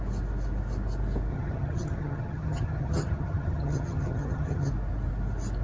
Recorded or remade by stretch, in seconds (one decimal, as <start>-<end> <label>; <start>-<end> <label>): 0.0-1.3 recorded; 1.3-4.7 remade; 4.7-5.6 recorded